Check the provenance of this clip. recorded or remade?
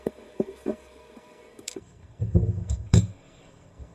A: remade